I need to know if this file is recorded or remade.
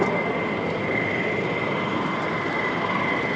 recorded